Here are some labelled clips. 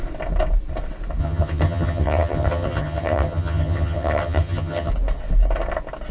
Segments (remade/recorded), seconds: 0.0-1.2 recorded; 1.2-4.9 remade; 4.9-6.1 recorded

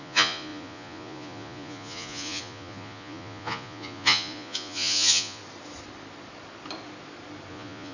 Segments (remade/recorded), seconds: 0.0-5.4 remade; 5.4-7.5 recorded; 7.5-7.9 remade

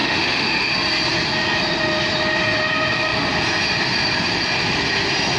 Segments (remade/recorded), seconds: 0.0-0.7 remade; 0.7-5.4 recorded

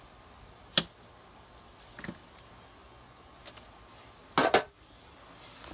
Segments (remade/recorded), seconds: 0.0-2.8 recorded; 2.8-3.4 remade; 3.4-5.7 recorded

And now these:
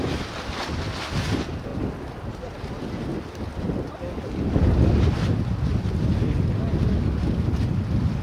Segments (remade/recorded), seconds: 0.0-8.2 recorded

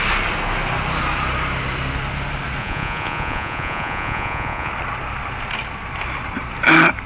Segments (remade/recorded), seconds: 0.0-2.6 recorded; 2.6-4.7 remade; 4.7-7.1 recorded